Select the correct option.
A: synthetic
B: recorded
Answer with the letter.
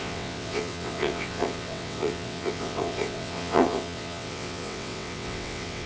A